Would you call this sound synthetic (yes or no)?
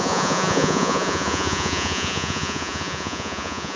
yes